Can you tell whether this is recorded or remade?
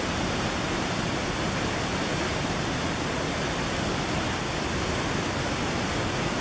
recorded